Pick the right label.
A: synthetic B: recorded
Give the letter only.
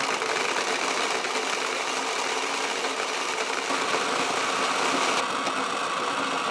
B